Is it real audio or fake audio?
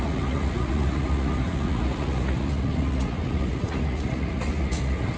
fake